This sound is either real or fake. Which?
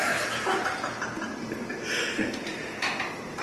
real